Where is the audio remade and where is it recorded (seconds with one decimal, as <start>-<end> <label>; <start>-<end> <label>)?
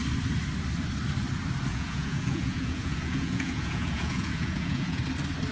0.0-1.7 recorded; 1.7-5.0 remade; 5.0-5.5 recorded